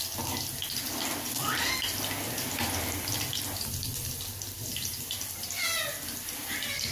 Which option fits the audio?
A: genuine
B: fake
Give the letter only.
A